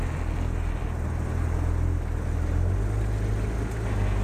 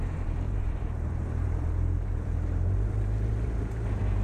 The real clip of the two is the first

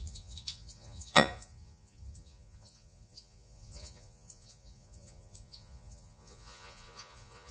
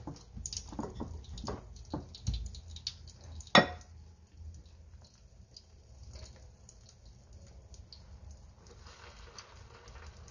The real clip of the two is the second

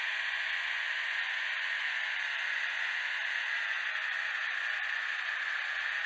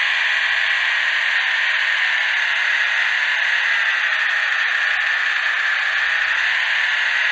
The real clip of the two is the second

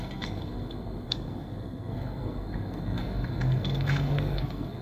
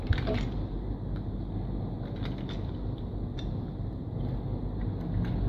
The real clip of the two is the second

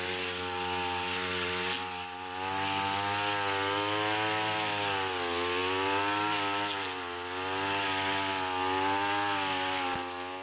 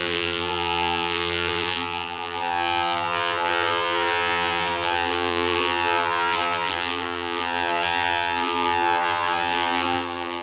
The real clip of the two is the first